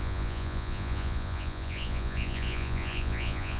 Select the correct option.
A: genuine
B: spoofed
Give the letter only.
B